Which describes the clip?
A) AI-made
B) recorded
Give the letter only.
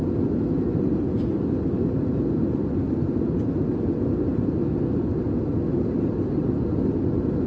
B